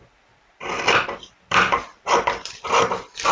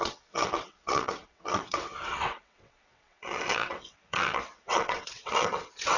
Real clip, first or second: first